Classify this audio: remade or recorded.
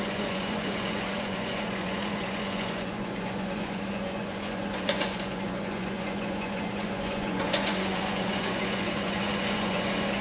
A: remade